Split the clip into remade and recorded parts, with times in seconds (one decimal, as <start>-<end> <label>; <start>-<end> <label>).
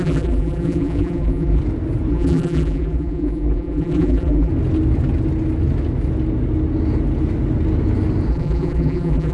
0.0-1.6 remade; 1.6-2.1 recorded; 2.1-4.5 remade; 4.5-8.3 recorded; 8.3-9.3 remade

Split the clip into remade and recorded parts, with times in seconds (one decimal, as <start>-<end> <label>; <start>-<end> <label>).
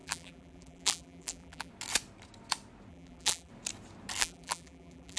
0.0-1.7 remade; 1.7-2.9 recorded; 2.9-3.5 remade; 3.5-4.2 recorded; 4.2-5.2 remade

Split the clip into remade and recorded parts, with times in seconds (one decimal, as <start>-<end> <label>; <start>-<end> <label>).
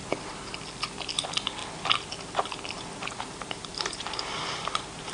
0.0-1.1 recorded; 1.1-1.6 remade; 1.6-3.2 recorded; 3.2-5.1 remade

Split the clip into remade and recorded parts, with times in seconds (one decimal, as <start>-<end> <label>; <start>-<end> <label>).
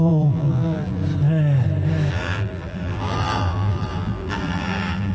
0.0-1.0 remade; 1.0-2.1 recorded; 2.1-5.1 remade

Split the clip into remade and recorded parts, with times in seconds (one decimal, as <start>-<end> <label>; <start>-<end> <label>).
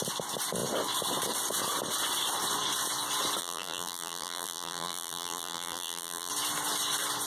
0.0-3.4 recorded; 3.4-6.3 remade; 6.3-7.3 recorded